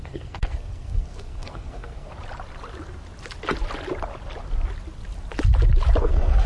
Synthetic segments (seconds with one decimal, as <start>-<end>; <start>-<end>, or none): 0.0-2.1; 6.0-6.5